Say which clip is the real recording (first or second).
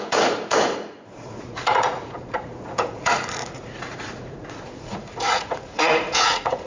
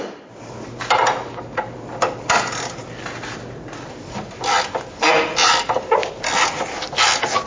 second